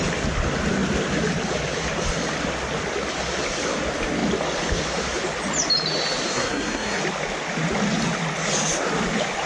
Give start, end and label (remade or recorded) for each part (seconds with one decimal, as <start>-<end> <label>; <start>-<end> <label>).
0.0-6.3 recorded; 6.3-7.0 remade; 7.0-9.5 recorded